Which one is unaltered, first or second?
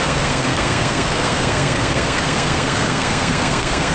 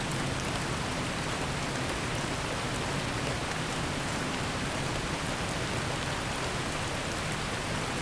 second